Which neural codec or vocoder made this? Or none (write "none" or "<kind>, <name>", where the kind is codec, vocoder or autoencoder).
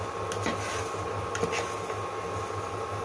none